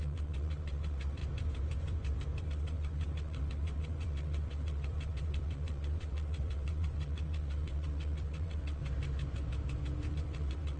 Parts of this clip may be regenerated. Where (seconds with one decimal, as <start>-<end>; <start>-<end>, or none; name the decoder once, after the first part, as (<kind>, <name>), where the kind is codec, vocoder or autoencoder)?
0.0-1.2 (vocoder, WaveNeXt); 2.4-8.8; 10.1-10.8